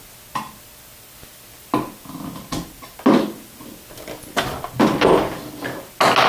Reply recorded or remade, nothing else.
recorded